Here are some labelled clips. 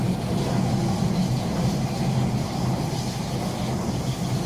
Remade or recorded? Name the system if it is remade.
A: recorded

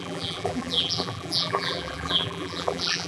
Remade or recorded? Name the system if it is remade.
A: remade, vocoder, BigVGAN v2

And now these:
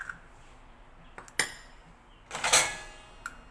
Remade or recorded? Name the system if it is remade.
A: recorded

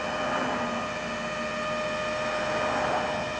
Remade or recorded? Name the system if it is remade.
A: recorded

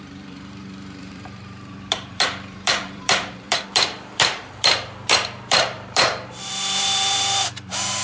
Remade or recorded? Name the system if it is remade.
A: remade, vocoder, BigVGAN v2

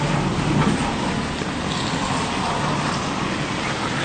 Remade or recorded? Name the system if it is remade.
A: recorded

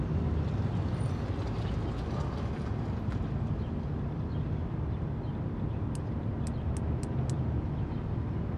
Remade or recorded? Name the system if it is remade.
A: recorded